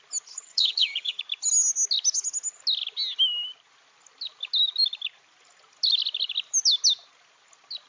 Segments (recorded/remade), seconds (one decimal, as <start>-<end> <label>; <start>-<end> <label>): 0.0-0.5 recorded; 0.5-1.2 remade; 1.2-7.9 recorded